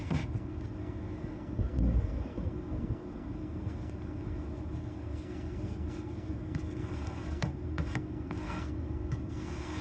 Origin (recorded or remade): remade